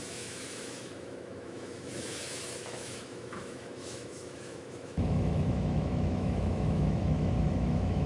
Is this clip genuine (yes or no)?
no